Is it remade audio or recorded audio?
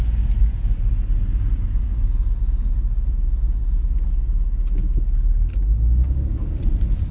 recorded